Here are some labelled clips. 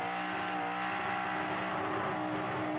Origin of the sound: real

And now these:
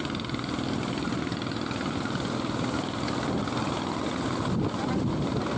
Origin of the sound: real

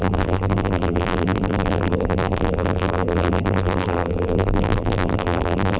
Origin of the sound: fake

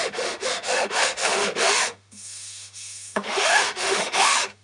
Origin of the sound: fake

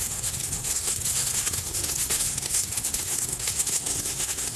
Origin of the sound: fake